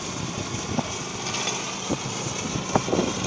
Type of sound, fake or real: real